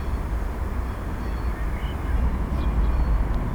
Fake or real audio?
real